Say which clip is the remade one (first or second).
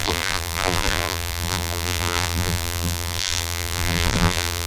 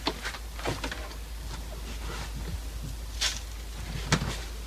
first